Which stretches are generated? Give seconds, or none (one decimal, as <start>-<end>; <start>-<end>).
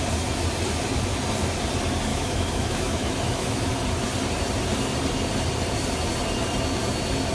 2.1-3.7